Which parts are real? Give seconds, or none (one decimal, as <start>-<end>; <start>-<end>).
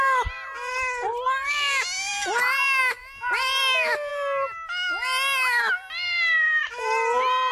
0.0-7.5